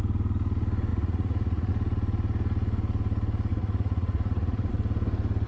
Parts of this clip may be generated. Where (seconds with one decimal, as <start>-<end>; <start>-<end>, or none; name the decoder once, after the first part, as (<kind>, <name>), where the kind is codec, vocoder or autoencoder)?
0.9-1.7 (vocoder, Vocos); 3.5-4.7